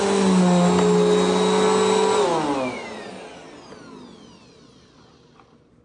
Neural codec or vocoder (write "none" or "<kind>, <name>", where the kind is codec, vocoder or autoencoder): none